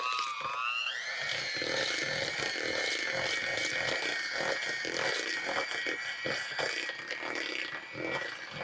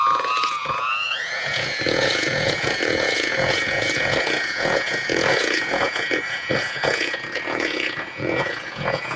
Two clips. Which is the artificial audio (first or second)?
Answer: second